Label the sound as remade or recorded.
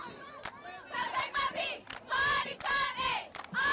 recorded